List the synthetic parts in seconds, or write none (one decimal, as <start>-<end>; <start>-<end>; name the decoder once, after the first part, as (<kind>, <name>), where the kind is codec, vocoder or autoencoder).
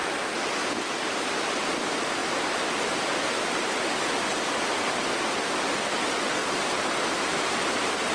none